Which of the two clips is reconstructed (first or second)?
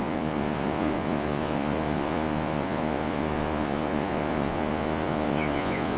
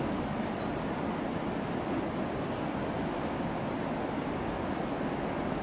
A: first